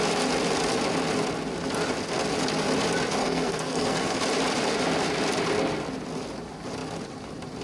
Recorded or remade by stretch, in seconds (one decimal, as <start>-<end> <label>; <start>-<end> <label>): 0.0-3.2 recorded; 3.2-4.2 remade; 4.2-7.6 recorded